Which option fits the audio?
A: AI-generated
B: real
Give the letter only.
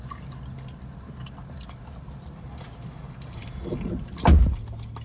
B